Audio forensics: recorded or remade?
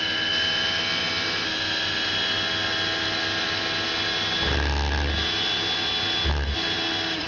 recorded